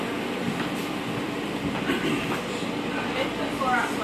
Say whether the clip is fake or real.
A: fake